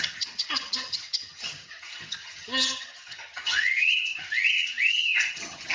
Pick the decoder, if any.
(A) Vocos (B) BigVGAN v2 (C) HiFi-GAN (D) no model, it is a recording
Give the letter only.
C